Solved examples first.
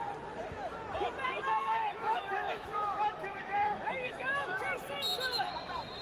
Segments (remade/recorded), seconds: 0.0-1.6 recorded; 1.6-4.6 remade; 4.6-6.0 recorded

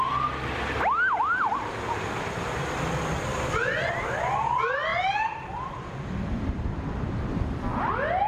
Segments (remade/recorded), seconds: 0.0-8.3 recorded

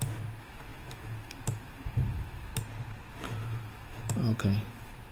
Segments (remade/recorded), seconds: 0.0-2.5 remade; 2.5-3.1 recorded; 3.1-5.1 remade

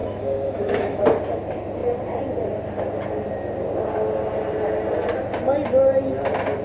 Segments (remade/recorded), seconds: 0.0-1.0 remade; 1.0-6.6 recorded

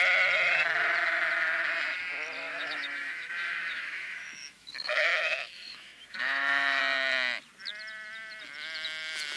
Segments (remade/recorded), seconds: 0.0-2.5 recorded; 2.5-6.8 remade; 6.8-9.4 recorded

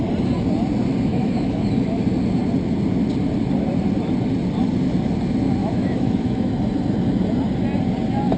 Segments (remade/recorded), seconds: 0.0-1.1 recorded; 1.1-1.7 remade; 1.7-5.6 recorded; 5.6-6.5 remade; 6.5-8.4 recorded